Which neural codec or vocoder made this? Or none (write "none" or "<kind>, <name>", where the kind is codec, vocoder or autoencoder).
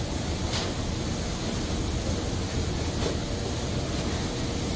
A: none